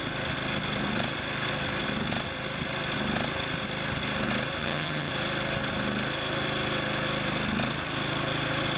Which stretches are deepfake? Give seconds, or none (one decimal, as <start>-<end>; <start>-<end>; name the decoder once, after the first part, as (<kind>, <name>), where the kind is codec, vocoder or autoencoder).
4.6-5.1 (vocoder, HiFi-GAN)